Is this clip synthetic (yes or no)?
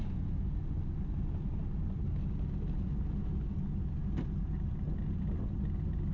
no